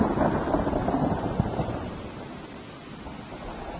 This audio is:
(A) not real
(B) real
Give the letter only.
B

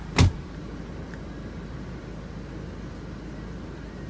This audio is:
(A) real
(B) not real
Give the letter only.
A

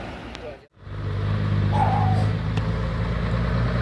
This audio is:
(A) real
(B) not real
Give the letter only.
A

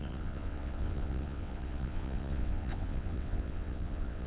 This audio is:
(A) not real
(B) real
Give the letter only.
A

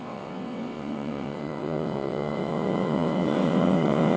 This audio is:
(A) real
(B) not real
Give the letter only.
B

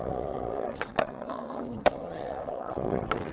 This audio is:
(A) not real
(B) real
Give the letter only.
A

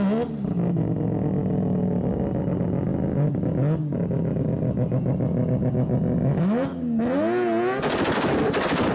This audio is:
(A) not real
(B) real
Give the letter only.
B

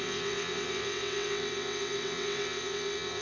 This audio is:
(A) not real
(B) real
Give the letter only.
A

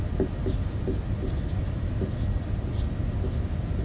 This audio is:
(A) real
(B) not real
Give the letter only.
A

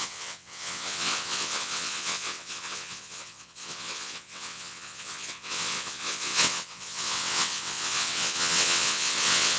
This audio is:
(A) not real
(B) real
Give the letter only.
A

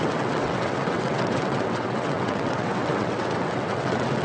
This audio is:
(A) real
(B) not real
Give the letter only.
B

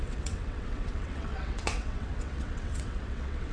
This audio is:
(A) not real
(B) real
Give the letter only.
A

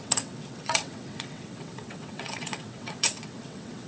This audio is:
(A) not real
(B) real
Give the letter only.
A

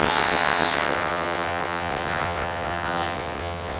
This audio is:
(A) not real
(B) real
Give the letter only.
A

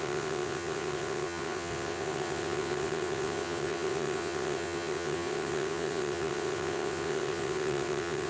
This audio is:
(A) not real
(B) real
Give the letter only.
A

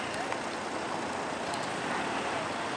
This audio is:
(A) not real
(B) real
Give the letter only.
B